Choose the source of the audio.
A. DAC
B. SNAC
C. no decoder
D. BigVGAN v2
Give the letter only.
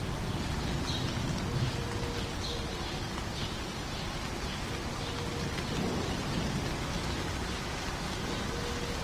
C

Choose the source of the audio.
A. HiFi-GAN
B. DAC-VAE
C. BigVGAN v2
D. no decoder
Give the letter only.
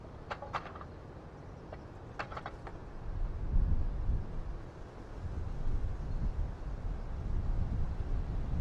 C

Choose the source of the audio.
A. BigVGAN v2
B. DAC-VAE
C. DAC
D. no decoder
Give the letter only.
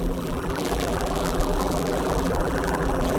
A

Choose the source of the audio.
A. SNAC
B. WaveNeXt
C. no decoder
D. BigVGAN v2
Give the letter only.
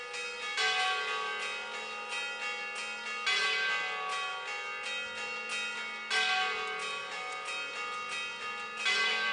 C